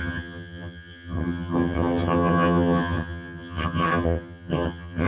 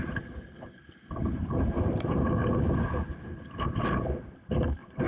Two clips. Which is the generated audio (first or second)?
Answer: first